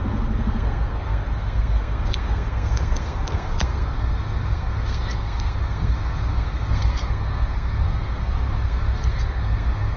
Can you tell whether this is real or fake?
fake